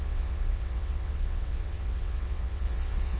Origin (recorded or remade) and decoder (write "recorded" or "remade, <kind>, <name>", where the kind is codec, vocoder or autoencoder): remade, vocoder, WaveNeXt